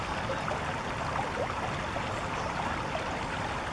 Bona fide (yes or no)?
yes